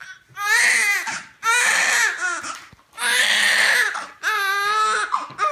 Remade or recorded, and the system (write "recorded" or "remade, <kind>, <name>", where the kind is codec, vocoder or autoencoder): recorded